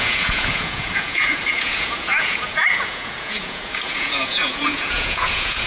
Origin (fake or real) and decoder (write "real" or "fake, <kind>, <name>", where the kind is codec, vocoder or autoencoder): fake, vocoder, Vocos